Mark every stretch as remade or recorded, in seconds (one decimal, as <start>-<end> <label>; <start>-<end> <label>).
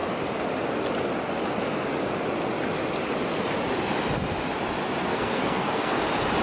0.0-5.1 recorded; 5.1-6.0 remade; 6.0-6.4 recorded